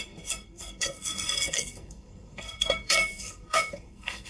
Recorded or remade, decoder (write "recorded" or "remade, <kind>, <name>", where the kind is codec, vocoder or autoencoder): remade, codec, SNAC